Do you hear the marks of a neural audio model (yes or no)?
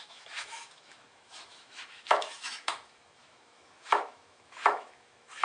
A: yes